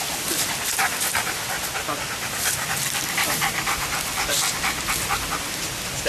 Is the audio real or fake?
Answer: real